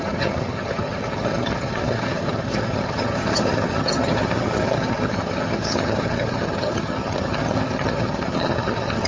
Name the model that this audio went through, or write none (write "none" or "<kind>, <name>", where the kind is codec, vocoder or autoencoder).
vocoder, HiFi-GAN